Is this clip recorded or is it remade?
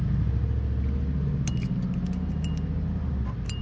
recorded